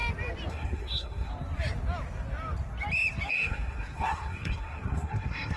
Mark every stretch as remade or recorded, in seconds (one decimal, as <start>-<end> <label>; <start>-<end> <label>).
0.0-0.5 recorded; 0.5-1.3 remade; 1.3-3.3 recorded; 3.3-5.6 remade